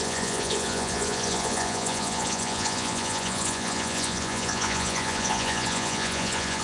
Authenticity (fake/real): fake